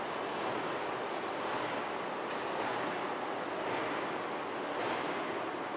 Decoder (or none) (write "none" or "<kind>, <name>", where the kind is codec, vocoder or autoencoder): none